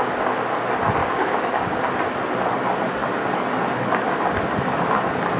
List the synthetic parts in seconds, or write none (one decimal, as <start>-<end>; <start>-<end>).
1.0-1.8